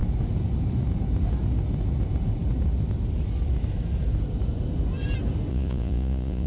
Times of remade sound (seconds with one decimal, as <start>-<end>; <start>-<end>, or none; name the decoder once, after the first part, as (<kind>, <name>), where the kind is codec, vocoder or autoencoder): 5.5-6.5 (vocoder, Vocos)